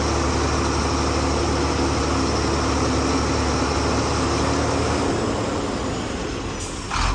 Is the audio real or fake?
real